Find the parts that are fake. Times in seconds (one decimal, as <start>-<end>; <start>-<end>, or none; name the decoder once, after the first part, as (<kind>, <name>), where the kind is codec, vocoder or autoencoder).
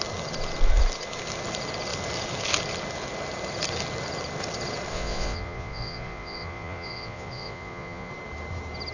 4.9-8.1 (vocoder, Vocos)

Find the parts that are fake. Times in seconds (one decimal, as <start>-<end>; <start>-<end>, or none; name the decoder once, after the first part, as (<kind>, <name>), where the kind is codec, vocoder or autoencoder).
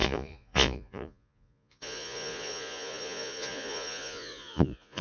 0.0-5.0 (vocoder, Vocos)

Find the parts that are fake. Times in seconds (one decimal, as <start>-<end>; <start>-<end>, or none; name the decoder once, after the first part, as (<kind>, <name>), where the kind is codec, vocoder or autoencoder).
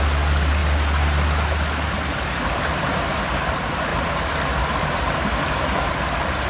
none